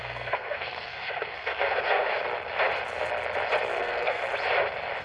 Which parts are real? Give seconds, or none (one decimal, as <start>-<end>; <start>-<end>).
2.0-3.8; 4.2-5.0